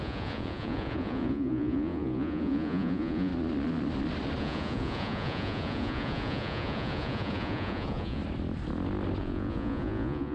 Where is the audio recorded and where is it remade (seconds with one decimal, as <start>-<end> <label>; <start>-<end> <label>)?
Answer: 0.0-3.3 remade; 3.3-4.4 recorded; 4.4-8.2 remade; 8.2-9.2 recorded; 9.2-10.3 remade

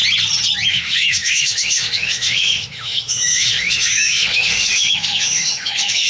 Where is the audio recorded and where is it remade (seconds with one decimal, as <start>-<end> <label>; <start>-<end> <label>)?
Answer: 0.0-0.7 recorded; 0.7-6.1 remade